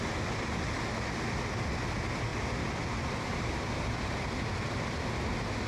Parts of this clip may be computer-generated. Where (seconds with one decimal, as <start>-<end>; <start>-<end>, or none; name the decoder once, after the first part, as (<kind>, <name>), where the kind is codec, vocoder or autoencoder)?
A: 2.3-5.1 (vocoder, BigVGAN v2)